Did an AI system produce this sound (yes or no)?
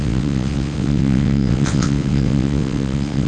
yes